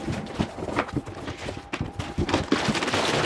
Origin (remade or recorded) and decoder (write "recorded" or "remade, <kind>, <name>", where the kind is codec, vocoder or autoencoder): recorded